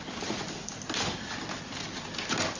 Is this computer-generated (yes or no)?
no